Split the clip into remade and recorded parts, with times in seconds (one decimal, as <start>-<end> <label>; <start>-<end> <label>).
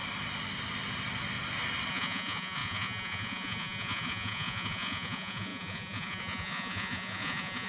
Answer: 0.0-1.9 recorded; 1.9-7.7 remade